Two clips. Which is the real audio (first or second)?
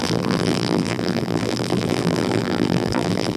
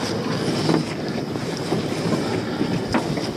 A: second